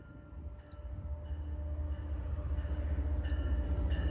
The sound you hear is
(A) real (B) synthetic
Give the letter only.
A